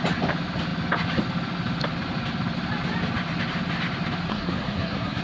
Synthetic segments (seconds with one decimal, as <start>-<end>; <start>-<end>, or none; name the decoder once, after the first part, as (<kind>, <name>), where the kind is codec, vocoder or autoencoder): 4.3-5.2 (codec, SNAC)